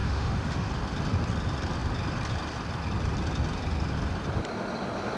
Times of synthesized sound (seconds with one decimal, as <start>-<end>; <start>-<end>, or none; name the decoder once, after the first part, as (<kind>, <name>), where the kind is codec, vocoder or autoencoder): 0.0-0.7 (autoencoder, DAC-VAE)

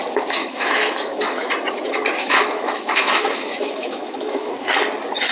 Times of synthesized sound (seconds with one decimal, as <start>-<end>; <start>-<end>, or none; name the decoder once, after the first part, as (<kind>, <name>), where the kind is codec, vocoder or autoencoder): 0.4-1.5 (autoencoder, DAC-VAE); 2.2-4.5

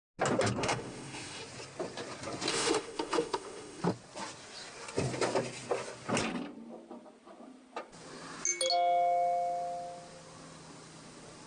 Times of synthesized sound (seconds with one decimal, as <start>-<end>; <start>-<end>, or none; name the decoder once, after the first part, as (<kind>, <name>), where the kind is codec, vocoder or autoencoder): 0.6-1.4 (autoencoder, DAC-VAE); 2.5-3.8

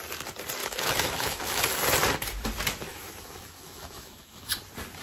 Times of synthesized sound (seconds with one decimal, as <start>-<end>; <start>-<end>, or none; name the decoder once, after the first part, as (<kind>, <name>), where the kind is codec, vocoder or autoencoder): 0.6-1.6 (autoencoder, DAC-VAE); 2.9-4.5

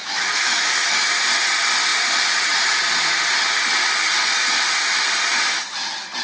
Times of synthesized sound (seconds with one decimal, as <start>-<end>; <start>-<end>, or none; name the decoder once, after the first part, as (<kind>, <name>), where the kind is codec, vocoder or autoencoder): 0.0-1.2 (autoencoder, DAC-VAE)

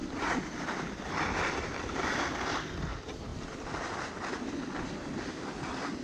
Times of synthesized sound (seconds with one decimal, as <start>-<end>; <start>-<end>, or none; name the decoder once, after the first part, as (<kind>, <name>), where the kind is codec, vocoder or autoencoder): none

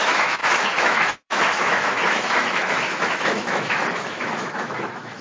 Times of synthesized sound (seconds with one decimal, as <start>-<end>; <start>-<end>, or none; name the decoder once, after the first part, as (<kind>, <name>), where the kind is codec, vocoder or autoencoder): 0.0-5.2 (autoencoder, DAC-VAE)

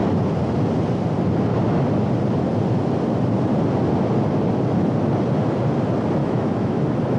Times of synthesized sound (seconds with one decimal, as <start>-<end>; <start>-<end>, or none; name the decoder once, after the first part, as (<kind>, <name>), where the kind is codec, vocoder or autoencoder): 6.2-6.8 (autoencoder, DAC-VAE)